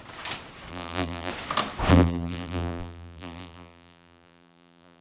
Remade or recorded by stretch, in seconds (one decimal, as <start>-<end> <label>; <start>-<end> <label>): 0.0-0.7 recorded; 0.7-1.3 remade; 1.3-1.9 recorded; 1.9-5.0 remade